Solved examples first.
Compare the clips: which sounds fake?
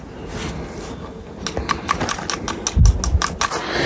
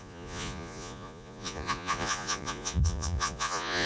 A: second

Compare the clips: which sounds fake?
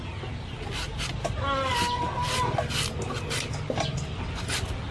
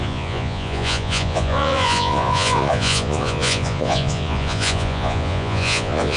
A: second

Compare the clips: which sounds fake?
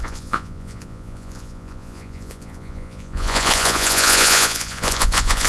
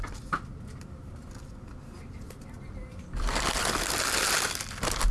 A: first